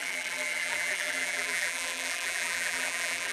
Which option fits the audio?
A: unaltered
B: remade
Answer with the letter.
B